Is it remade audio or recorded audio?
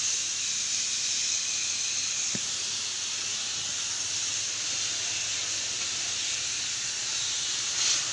recorded